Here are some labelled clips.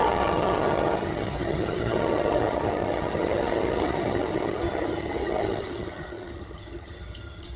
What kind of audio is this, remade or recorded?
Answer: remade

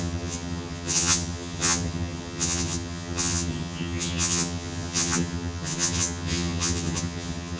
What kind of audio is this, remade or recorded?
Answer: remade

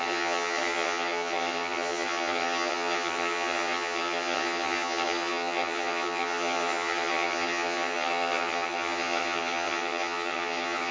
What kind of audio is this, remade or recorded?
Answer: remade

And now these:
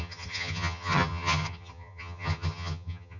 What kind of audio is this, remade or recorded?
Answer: remade